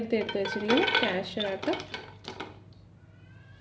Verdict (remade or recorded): recorded